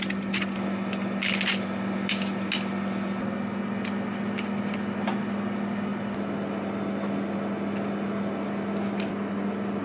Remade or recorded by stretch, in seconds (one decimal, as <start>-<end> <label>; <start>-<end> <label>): 0.0-9.8 recorded